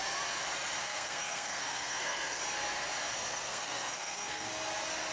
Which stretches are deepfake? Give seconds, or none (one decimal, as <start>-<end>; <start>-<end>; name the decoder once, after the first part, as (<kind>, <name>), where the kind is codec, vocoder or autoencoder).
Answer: 0.8-2.4 (codec, SNAC); 3.3-4.5